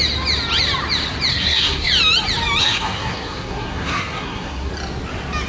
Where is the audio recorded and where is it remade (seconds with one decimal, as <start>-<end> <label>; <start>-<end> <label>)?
0.0-1.3 recorded; 1.3-1.9 remade; 1.9-2.6 recorded; 2.6-4.7 remade; 4.7-5.5 recorded